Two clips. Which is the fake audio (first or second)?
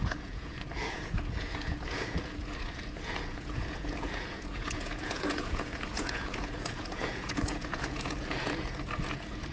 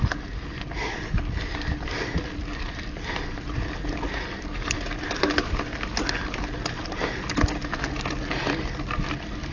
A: first